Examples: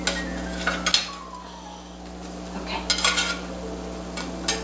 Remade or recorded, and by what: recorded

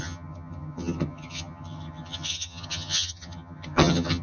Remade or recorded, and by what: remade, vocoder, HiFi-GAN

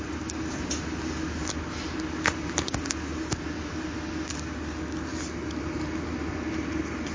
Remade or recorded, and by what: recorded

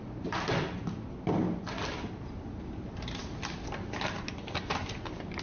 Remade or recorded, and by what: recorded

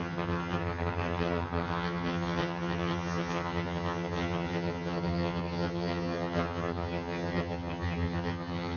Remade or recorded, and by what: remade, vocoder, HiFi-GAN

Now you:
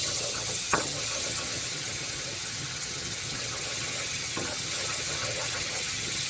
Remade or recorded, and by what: remade, vocoder, HiFi-GAN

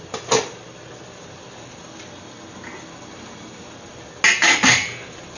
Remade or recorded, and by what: recorded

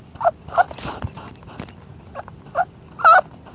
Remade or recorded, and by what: recorded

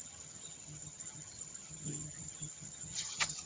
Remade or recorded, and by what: remade, vocoder, HiFi-GAN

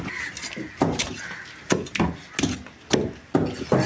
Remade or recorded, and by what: recorded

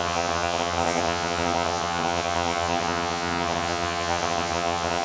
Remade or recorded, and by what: remade, vocoder, HiFi-GAN